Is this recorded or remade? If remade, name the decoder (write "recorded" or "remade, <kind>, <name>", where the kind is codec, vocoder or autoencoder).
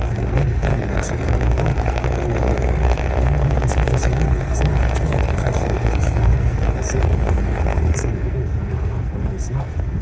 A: remade, codec, SNAC